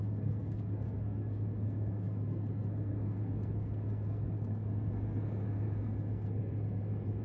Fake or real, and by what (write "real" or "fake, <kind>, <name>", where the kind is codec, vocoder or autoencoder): fake, codec, SNAC